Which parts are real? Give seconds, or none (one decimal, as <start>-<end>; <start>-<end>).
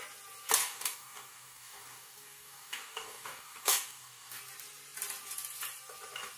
0.0-0.6; 4.4-6.4